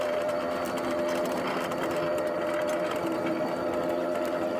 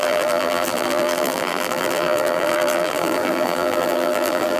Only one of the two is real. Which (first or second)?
first